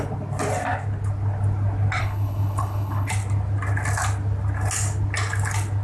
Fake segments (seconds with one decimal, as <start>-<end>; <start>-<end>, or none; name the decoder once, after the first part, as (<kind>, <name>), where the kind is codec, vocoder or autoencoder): 2.0-3.1 (codec, HILCodec)